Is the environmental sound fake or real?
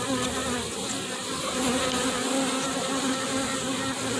real